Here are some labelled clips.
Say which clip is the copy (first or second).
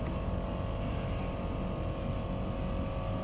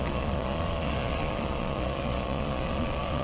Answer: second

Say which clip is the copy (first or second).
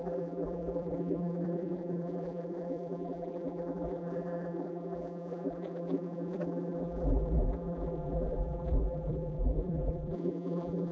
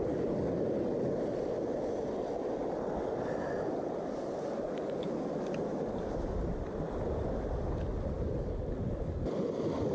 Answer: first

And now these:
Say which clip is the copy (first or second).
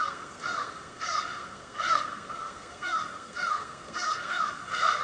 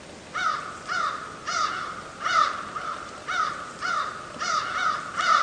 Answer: first